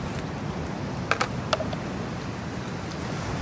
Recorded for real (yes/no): yes